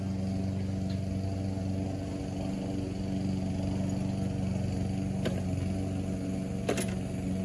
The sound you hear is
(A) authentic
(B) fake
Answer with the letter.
A